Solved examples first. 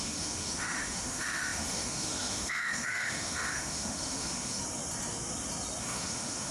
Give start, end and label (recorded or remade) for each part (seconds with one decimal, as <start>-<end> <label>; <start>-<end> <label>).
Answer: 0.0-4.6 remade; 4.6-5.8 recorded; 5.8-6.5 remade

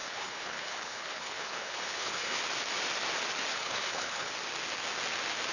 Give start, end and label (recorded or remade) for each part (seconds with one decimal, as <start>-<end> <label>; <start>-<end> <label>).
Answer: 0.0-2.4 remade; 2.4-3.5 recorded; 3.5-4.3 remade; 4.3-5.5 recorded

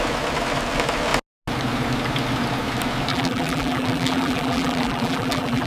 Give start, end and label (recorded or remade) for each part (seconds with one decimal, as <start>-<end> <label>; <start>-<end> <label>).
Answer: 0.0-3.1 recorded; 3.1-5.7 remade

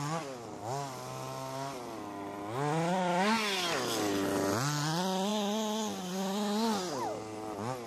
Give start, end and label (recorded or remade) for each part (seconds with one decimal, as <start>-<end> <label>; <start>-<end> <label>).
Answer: 0.0-7.9 recorded

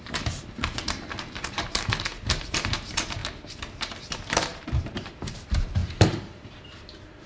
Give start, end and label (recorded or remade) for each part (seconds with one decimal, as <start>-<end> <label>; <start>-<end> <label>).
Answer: 0.0-3.2 remade; 3.2-3.9 recorded; 3.9-7.3 remade

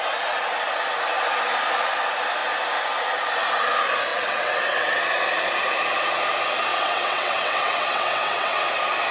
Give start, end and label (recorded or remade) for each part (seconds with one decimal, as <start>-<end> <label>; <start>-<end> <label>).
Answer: 0.0-4.1 recorded; 4.1-5.0 remade; 5.0-6.7 recorded; 6.7-8.6 remade; 8.6-9.1 recorded

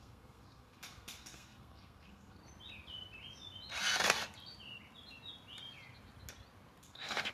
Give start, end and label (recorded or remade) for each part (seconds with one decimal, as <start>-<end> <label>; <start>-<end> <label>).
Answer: 0.0-2.4 remade; 2.4-6.8 recorded; 6.8-7.3 remade